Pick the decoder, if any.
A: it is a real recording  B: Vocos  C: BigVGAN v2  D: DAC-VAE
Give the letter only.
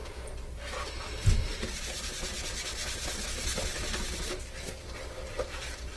A